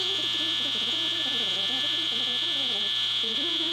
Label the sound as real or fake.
fake